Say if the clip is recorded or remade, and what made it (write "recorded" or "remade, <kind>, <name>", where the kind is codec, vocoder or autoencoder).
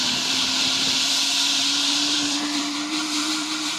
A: remade, vocoder, BigVGAN v2